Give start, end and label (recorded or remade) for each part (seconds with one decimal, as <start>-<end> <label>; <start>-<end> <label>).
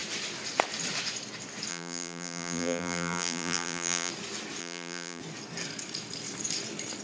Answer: 0.0-1.7 recorded; 1.7-4.1 remade; 4.1-4.6 recorded; 4.6-5.2 remade; 5.2-7.0 recorded